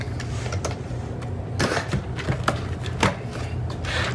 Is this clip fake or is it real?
real